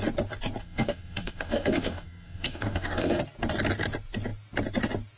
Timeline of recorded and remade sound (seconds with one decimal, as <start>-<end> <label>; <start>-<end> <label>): 0.0-0.6 recorded; 0.6-3.2 remade; 3.2-5.2 recorded